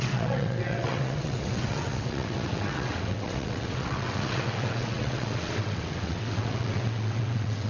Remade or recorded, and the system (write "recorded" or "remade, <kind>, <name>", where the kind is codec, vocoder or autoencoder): remade, vocoder, WaveNeXt